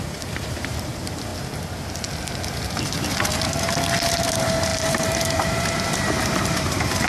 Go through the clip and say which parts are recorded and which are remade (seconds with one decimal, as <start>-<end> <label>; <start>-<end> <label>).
0.0-1.3 remade; 1.3-4.2 recorded; 4.2-7.1 remade